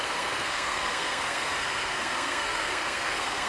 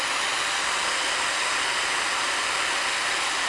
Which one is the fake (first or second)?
first